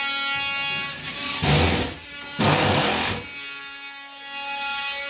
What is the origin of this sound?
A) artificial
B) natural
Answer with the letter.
B